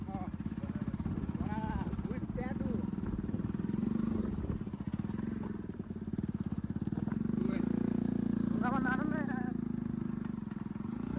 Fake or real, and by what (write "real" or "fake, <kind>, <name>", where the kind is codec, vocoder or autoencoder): real